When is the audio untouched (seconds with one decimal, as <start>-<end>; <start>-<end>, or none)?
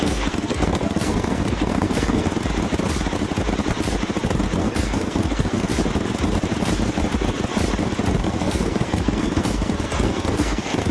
2.3-4.6; 5.7-8.2